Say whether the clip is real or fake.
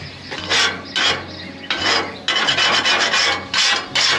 real